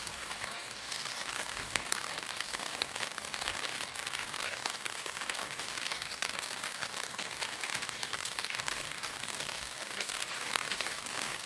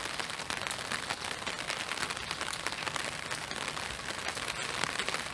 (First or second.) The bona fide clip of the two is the second